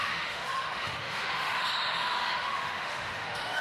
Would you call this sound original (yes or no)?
no